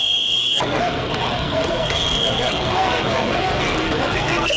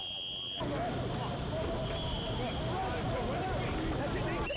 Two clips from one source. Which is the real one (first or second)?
second